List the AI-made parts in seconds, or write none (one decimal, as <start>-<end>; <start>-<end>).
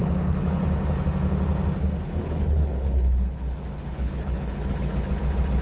0.0-0.6; 2.2-5.1